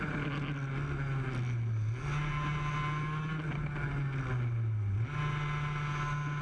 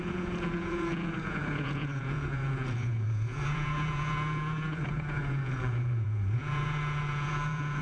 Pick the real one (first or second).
first